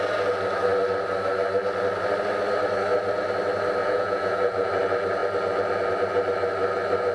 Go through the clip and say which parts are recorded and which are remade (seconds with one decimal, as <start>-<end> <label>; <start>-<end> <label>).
0.0-3.8 recorded; 3.8-4.7 remade; 4.7-7.1 recorded